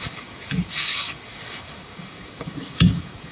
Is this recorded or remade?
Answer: remade